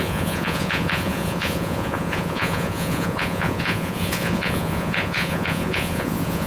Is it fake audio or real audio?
fake